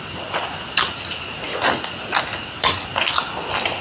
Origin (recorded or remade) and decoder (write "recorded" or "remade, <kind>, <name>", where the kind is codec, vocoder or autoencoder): recorded